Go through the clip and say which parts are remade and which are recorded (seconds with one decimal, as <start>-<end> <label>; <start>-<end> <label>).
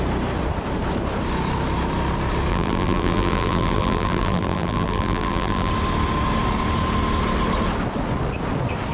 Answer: 0.0-2.5 recorded; 2.5-5.7 remade; 5.7-8.9 recorded